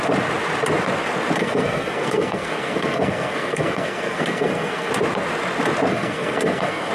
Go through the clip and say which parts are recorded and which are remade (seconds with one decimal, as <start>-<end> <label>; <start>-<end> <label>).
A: 0.0-1.4 recorded; 1.4-4.9 remade; 4.9-5.9 recorded; 5.9-6.9 remade